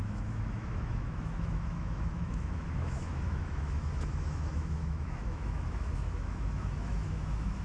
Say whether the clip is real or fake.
fake